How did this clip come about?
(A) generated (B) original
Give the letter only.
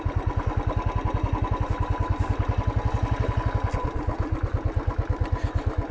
B